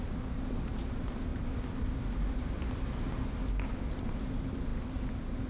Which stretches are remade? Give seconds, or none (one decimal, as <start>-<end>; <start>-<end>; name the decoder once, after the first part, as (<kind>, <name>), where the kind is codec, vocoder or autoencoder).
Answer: none

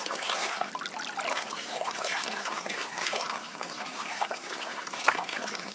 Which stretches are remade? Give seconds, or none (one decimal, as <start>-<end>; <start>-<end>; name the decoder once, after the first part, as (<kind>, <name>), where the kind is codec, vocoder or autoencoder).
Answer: 0.0-0.7 (codec, SNAC); 1.3-5.7

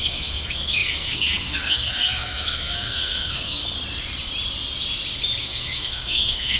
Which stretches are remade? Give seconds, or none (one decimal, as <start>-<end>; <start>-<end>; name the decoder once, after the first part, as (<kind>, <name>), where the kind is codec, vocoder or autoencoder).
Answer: 0.0-3.6 (codec, SNAC); 5.4-6.6

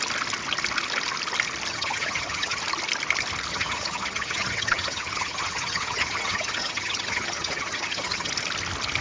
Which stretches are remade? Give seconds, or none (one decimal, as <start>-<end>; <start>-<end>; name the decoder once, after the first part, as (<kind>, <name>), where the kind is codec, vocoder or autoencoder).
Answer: 1.7-2.6 (vocoder, HiFi-GAN); 3.5-8.3

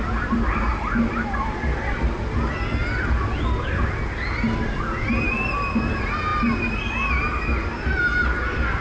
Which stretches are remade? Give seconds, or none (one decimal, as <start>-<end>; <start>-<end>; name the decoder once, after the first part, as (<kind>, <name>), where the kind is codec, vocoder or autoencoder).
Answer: none

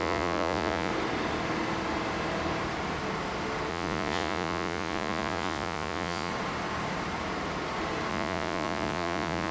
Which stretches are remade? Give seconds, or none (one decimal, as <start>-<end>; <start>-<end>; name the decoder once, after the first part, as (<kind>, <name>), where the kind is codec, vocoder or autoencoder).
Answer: 0.0-0.9 (vocoder, Vocos); 3.7-6.3; 8.1-9.5

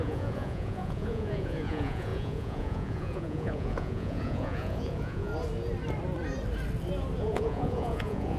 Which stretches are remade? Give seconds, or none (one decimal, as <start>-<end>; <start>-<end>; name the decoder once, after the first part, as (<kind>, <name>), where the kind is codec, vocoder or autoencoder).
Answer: 0.0-5.3 (vocoder, Vocos); 7.2-8.4

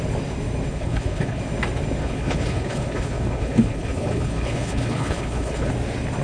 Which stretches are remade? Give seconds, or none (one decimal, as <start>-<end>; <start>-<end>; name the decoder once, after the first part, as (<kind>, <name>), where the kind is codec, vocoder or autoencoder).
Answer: 0.7-1.4 (codec, HILCodec); 2.0-5.7